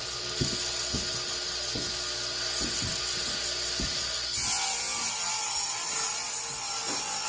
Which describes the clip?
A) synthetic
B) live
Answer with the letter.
B